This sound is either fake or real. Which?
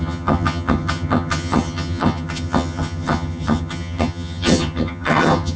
fake